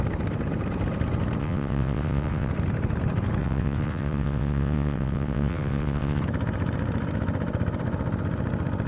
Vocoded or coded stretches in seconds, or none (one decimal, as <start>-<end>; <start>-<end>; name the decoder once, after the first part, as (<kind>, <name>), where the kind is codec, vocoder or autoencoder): 1.4-2.5 (vocoder, WaveNeXt); 3.4-6.2